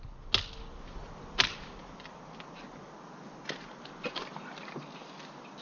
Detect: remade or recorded recorded